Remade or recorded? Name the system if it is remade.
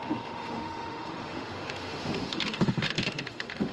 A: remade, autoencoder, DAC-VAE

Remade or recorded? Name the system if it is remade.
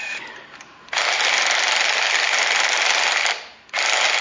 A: recorded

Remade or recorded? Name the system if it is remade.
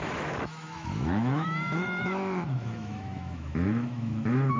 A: remade, autoencoder, DAC-VAE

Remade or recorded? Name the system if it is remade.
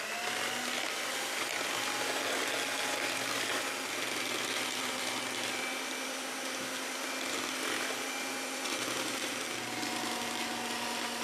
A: recorded